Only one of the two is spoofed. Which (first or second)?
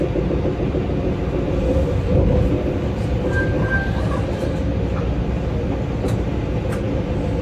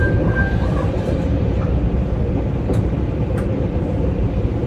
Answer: second